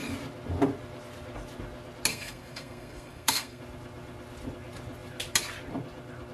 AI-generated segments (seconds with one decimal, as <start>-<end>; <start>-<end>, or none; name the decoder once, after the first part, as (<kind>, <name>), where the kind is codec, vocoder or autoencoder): 2.1-3.6 (codec, SNAC)